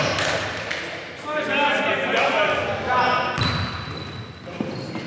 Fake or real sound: real